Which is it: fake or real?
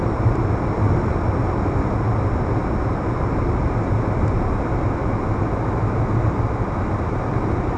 real